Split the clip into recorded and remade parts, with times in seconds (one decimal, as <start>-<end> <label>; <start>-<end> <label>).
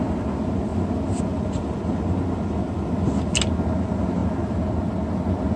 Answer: 0.0-5.6 recorded